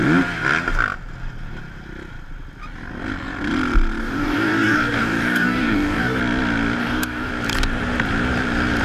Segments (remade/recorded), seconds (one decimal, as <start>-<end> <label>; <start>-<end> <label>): 0.0-4.0 recorded; 4.0-6.2 remade; 6.2-6.8 recorded; 6.8-7.3 remade; 7.3-8.8 recorded